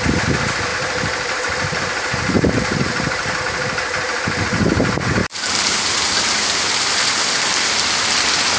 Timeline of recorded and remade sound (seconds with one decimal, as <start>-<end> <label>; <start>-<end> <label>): 0.0-0.7 recorded; 0.7-3.4 remade; 3.4-5.2 recorded; 5.2-6.8 remade; 6.8-8.6 recorded